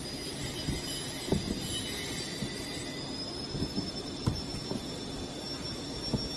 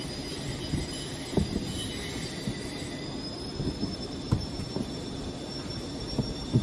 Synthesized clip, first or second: second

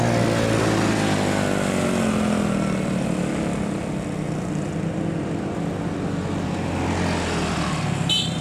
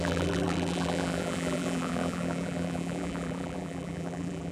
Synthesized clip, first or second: second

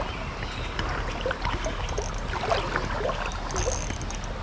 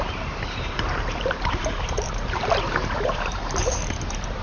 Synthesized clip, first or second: second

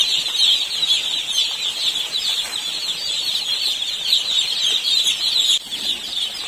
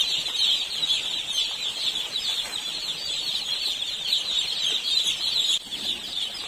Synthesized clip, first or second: second